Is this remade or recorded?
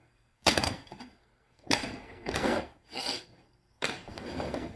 remade